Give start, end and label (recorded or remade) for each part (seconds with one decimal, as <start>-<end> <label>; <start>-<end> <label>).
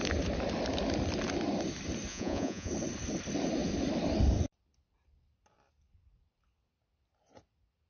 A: 0.0-2.1 recorded; 2.1-2.7 remade; 2.7-7.9 recorded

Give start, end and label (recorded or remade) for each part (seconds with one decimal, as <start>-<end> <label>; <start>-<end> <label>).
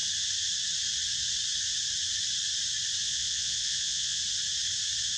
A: 0.0-3.0 recorded; 3.0-4.2 remade; 4.2-5.2 recorded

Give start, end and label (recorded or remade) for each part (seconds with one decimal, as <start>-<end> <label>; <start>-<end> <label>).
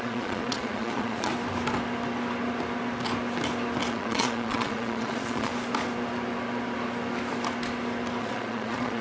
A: 0.0-1.3 remade; 1.3-3.9 recorded; 3.9-5.5 remade; 5.5-8.2 recorded; 8.2-9.0 remade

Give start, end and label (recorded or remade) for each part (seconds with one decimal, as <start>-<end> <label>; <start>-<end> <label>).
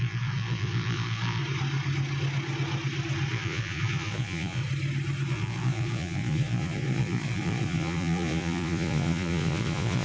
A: 0.0-1.4 remade; 1.4-3.3 recorded; 3.3-4.6 remade; 4.6-5.3 recorded; 5.3-10.0 remade